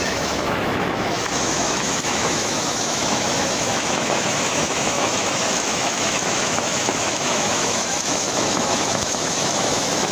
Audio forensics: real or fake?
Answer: fake